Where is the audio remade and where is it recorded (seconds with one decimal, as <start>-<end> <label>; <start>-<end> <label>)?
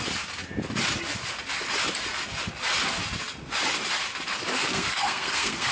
0.0-4.5 recorded; 4.5-5.7 remade